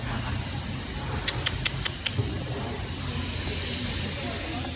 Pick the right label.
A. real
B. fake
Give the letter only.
A